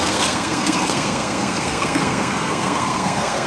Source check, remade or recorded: remade